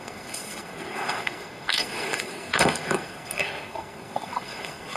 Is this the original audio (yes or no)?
no